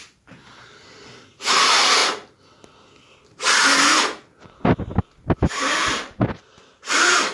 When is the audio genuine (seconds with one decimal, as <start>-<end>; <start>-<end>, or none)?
2.0-5.5